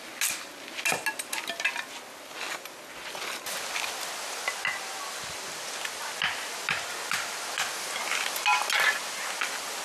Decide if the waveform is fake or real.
real